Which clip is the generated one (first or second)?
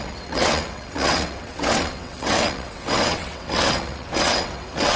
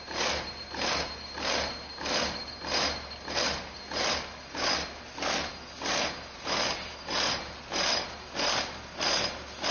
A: first